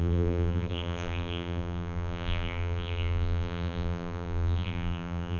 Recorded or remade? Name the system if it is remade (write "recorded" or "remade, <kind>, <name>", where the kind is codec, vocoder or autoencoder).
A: remade, vocoder, BigVGAN v2